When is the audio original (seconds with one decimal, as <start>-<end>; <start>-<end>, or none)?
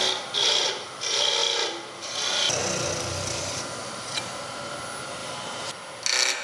0.0-3.8; 4.3-5.2; 5.7-6.4